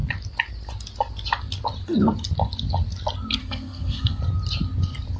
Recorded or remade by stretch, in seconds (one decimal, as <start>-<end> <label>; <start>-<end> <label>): 0.0-3.4 recorded; 3.4-4.2 remade; 4.2-5.2 recorded